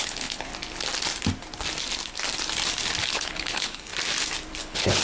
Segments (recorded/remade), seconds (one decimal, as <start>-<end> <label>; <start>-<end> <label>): 0.0-0.5 remade; 0.5-3.1 recorded; 3.1-3.9 remade; 3.9-4.6 recorded; 4.6-5.0 remade